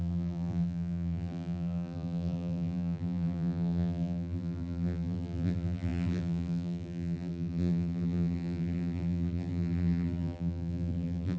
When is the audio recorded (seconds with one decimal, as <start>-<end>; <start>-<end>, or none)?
none